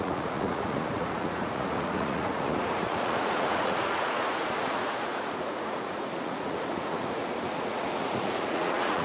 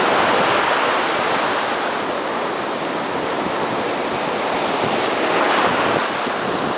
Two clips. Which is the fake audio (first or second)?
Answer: first